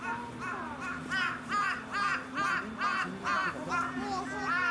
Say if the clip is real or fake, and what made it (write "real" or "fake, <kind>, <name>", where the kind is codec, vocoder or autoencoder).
real